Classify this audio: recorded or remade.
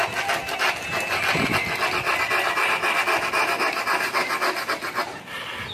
recorded